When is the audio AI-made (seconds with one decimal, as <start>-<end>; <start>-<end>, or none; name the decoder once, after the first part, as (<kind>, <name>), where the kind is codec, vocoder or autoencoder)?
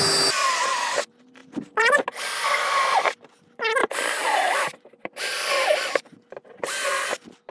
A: 1.4-2.0 (vocoder, BigVGAN v2); 3.8-7.5